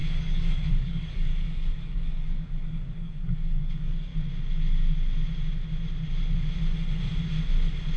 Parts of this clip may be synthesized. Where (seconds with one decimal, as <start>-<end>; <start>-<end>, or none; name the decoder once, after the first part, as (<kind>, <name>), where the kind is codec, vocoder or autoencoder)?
0.0-4.1 (codec, DAC)